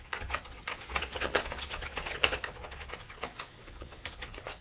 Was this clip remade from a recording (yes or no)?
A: yes